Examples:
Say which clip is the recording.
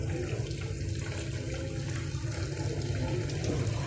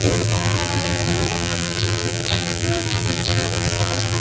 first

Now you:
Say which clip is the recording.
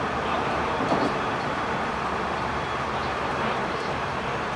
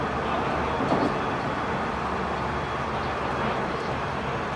second